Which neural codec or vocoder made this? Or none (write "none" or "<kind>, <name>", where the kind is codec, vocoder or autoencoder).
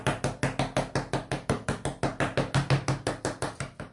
none